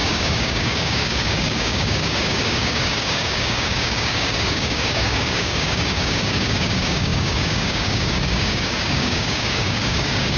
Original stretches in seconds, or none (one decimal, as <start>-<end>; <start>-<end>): none